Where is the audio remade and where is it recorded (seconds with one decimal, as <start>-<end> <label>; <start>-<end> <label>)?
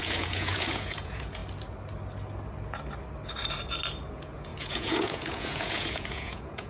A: 0.0-1.4 remade; 1.4-4.1 recorded; 4.1-6.7 remade